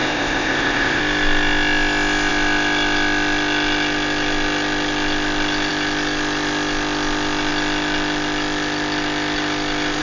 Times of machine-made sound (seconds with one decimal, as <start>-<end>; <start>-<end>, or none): 0.0-1.0